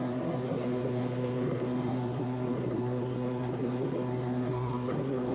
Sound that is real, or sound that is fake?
fake